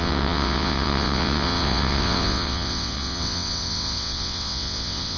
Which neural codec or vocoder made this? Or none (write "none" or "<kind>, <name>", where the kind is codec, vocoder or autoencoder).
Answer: vocoder, WaveNeXt